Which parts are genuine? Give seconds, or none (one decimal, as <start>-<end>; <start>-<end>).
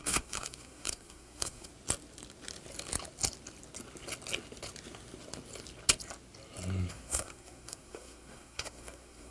1.7-6.9